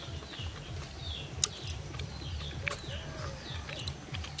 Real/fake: real